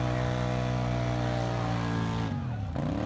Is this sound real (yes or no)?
yes